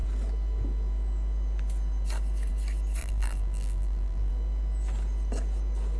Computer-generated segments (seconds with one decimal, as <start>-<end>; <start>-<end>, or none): 3.0-4.3